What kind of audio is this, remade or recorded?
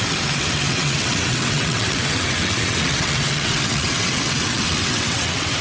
remade